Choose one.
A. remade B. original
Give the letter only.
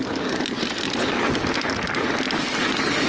B